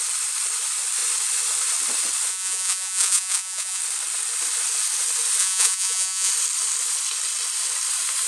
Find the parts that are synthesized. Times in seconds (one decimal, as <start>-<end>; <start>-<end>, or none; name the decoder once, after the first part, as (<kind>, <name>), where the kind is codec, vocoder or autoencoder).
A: 2.3-3.8 (vocoder, Vocos); 5.4-6.3